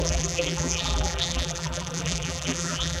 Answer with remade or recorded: remade